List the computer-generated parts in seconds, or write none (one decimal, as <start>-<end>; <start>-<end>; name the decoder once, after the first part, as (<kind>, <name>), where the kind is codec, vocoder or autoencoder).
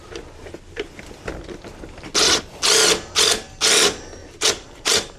4.2-5.2 (vocoder, BigVGAN v2)